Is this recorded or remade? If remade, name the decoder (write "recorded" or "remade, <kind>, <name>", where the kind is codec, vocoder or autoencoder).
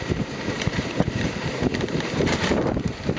remade, vocoder, BigVGAN v2